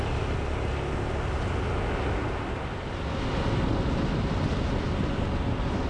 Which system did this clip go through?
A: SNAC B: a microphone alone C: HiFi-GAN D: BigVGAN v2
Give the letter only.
B